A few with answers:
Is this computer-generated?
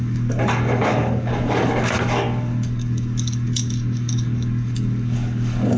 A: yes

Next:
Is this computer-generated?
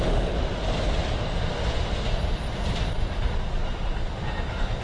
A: no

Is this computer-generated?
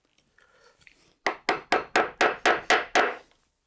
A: no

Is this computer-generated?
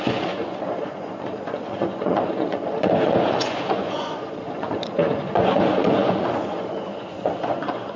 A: yes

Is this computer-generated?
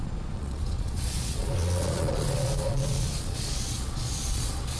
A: yes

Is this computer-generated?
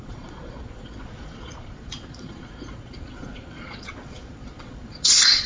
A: yes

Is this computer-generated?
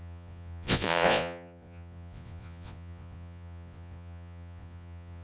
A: yes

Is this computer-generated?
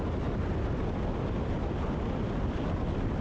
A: no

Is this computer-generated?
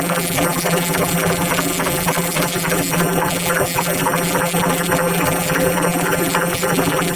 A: yes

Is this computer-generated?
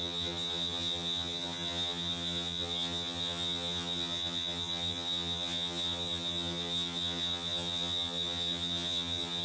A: yes